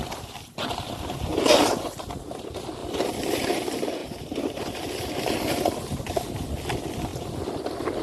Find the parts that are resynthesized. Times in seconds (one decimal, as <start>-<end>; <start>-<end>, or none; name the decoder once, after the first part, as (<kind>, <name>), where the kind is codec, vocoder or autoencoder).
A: 1.3-2.1 (vocoder, BigVGAN v2); 2.8-3.4; 4.0-5.1; 7.1-7.6